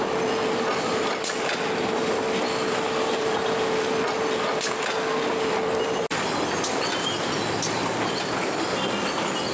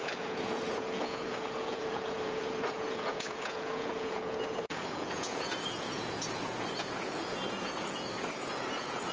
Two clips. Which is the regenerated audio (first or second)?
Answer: second